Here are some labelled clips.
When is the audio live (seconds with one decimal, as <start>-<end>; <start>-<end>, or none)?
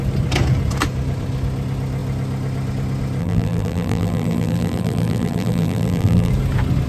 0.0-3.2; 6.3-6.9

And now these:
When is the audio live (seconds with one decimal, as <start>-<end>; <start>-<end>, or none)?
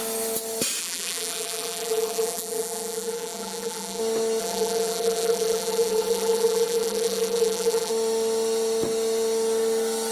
0.0-0.8; 4.0-4.4; 7.9-10.1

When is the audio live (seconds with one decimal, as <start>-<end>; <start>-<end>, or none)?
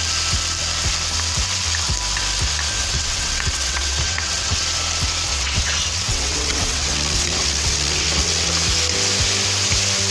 0.0-2.8; 4.6-5.3; 8.5-10.1